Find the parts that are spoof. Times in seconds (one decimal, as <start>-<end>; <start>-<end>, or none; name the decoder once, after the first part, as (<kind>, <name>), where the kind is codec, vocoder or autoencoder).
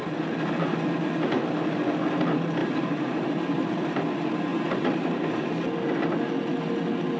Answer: 2.6-4.0 (vocoder, BigVGAN v2); 4.5-5.5